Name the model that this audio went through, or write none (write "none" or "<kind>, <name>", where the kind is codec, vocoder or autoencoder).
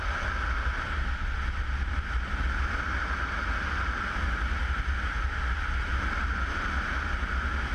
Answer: none